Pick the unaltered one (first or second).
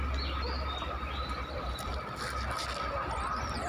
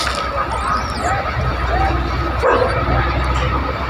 second